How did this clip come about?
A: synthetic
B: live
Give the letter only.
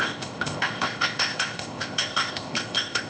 A